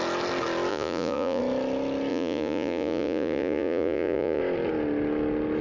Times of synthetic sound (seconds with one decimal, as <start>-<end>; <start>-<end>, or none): 0.7-1.4; 2.1-4.4